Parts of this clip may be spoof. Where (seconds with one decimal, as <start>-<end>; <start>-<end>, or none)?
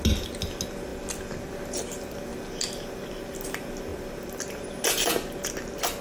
none